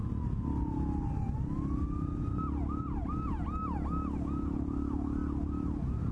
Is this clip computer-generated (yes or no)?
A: no